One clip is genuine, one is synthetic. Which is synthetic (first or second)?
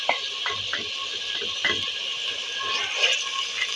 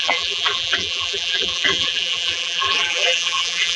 second